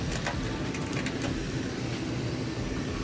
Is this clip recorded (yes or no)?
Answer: yes